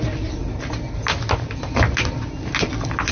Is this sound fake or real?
real